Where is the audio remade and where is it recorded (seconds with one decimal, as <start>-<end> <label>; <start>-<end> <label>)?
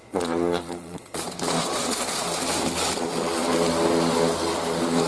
0.0-2.4 remade; 2.4-5.1 recorded